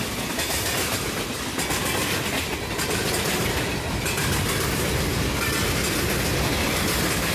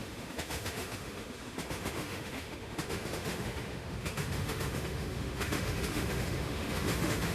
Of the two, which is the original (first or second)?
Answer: first